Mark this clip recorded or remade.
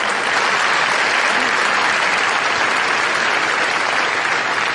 recorded